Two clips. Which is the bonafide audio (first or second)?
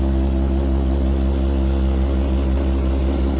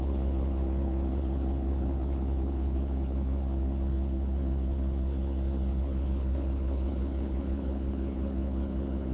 first